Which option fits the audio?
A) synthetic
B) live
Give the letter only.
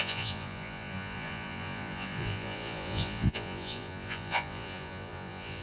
A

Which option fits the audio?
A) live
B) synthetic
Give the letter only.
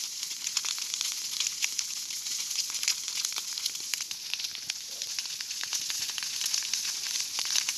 B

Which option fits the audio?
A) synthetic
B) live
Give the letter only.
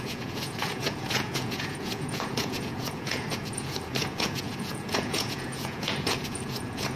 A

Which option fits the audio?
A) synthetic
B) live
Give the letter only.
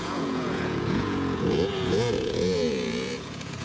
A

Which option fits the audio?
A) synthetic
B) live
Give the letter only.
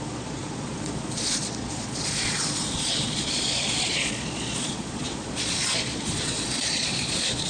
A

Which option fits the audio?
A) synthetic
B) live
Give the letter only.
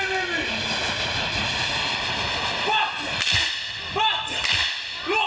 B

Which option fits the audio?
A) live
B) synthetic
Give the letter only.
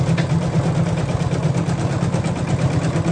A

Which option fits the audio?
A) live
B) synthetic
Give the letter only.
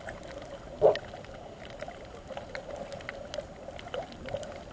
A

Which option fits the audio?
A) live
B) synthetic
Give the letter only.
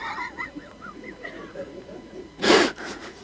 B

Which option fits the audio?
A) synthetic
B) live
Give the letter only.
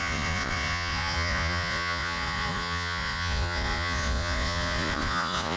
A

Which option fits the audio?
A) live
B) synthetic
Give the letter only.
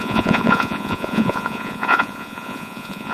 B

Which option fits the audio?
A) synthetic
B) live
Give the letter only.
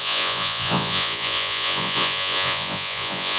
A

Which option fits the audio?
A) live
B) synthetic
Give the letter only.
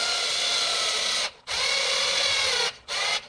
B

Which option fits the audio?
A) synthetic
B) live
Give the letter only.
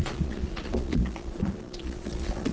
A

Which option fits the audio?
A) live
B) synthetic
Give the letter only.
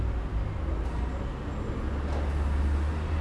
A